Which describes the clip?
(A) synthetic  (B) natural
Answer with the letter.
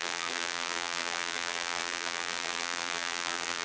A